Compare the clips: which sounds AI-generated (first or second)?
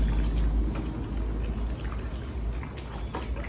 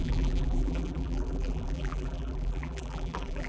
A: second